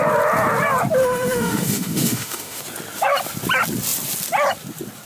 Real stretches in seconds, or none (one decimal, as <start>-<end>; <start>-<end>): 0.0-1.0; 2.6-5.1